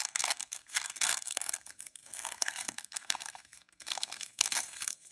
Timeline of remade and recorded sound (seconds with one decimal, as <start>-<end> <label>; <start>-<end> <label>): 0.0-5.1 remade